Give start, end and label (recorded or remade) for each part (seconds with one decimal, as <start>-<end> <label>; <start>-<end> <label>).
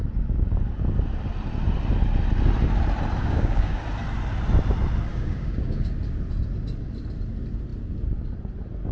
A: 0.0-3.2 recorded; 3.2-3.8 remade; 3.8-5.1 recorded; 5.1-5.9 remade; 5.9-8.9 recorded